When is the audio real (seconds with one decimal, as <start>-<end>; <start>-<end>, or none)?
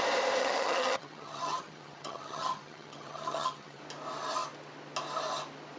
0.0-0.4; 3.8-5.8